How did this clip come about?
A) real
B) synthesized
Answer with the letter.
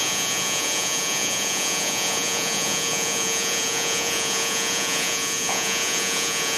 B